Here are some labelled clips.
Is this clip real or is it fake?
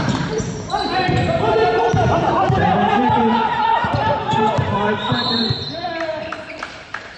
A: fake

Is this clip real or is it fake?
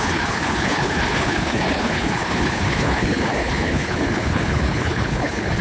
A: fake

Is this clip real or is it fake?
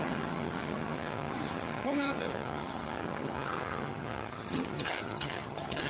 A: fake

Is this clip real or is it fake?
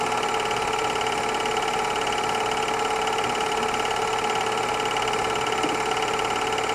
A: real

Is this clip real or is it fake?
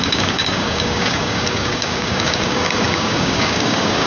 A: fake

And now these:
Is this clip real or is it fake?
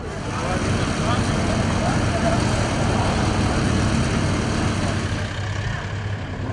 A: real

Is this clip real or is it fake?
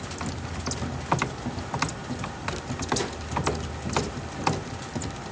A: real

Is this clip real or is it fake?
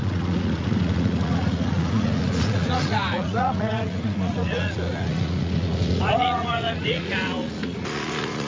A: fake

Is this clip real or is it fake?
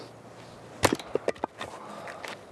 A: real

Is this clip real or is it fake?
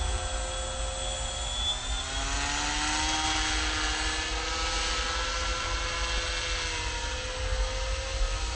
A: real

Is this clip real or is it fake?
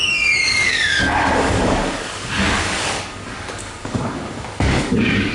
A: fake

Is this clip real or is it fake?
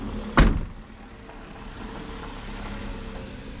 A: real